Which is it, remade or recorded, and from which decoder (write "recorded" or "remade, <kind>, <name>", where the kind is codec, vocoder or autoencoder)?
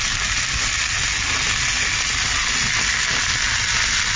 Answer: recorded